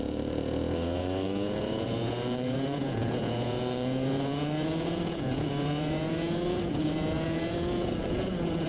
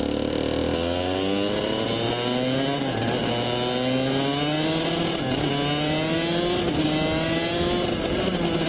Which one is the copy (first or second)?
first